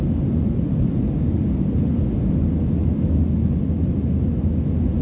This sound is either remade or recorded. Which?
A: recorded